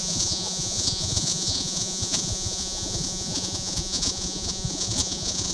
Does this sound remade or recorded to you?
remade